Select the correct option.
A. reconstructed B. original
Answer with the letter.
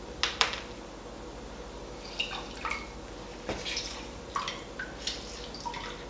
B